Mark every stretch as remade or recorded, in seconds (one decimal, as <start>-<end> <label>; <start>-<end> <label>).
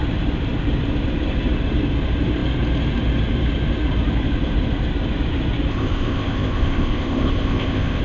0.0-5.7 recorded; 5.7-8.0 remade